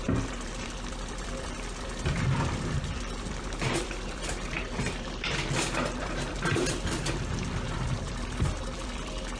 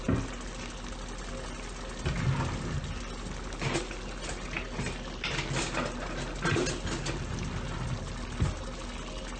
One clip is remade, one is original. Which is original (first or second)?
second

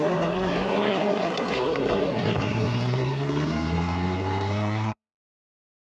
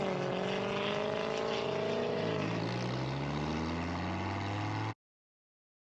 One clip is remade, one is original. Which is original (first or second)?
second